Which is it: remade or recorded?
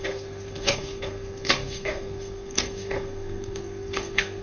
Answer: remade